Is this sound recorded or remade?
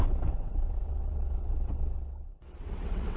remade